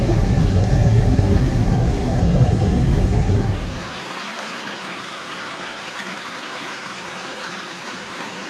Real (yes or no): no